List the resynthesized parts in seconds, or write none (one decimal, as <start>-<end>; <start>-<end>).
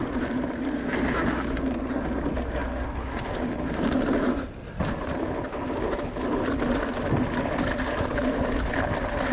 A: none